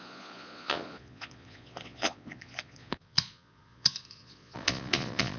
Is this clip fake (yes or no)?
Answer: yes